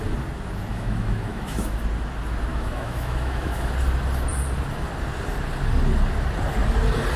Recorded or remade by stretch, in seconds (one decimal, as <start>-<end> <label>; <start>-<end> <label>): 0.0-0.7 recorded; 0.7-1.8 remade; 1.8-2.5 recorded; 2.5-3.7 remade; 3.7-7.2 recorded